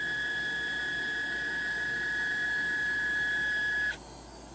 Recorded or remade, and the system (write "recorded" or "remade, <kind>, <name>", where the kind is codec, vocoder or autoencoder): recorded